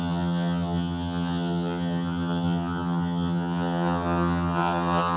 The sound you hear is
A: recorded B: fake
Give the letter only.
B